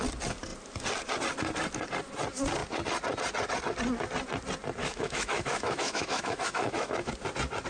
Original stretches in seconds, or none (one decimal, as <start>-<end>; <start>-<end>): 0.0-4.8; 7.1-7.7

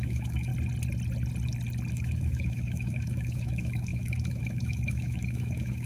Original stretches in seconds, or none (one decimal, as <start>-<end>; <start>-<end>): 0.5-1.9

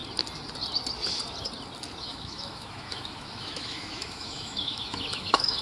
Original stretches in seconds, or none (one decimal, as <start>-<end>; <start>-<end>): 0.0-2.0

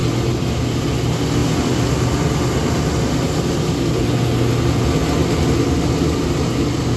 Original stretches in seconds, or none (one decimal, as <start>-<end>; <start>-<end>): 0.0-7.0